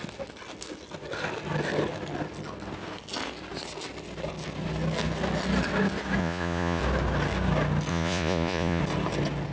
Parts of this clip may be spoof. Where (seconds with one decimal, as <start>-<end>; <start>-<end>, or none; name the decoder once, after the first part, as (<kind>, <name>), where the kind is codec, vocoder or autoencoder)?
6.2-6.8 (vocoder, Vocos); 7.9-8.8